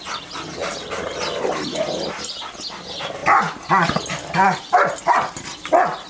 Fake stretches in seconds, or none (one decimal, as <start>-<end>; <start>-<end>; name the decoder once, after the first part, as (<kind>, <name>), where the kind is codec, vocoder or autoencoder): 0.6-1.2 (vocoder, BigVGAN v2)